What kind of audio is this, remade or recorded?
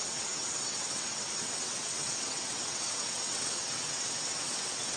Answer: remade